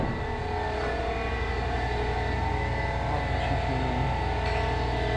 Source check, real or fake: real